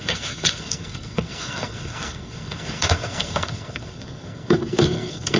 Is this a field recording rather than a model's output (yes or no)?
no